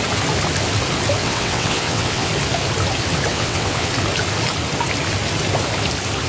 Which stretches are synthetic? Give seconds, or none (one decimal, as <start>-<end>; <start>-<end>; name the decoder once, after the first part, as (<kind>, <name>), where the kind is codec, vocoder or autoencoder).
1.2-2.3 (vocoder, WaveNeXt); 3.3-3.9